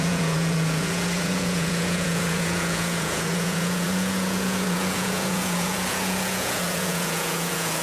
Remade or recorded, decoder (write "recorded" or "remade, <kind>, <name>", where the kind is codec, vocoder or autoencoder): remade, vocoder, Vocos